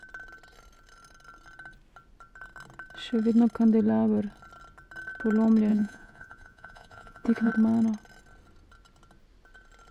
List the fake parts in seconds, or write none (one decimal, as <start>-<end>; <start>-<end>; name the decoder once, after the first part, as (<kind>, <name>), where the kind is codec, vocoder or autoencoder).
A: 5.7-7.5 (vocoder, Vocos)